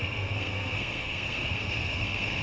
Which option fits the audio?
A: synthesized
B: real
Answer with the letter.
A